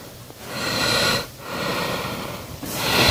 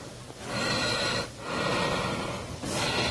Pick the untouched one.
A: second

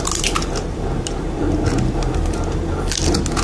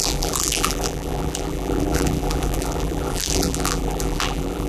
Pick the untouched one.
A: first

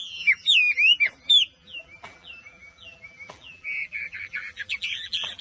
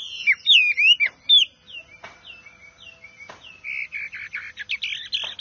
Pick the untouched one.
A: second